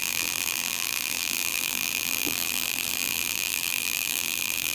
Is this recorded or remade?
remade